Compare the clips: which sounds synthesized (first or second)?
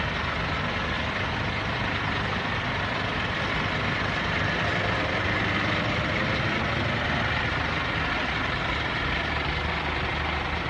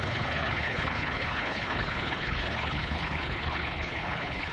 second